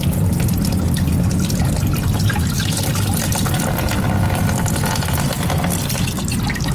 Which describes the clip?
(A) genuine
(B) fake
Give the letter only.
A